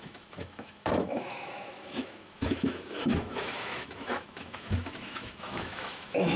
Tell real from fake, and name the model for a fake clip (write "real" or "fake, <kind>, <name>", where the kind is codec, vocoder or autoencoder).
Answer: fake, autoencoder, DAC-VAE